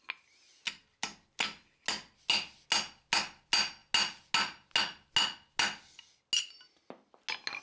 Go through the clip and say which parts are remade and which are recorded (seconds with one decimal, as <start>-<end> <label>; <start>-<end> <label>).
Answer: 0.0-7.6 recorded